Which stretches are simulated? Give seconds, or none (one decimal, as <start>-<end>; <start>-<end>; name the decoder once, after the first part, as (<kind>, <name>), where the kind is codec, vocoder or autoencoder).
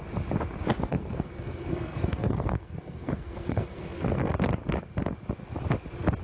0.8-4.3 (codec, SNAC)